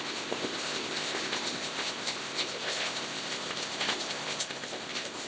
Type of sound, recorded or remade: remade